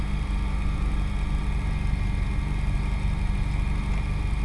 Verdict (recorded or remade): recorded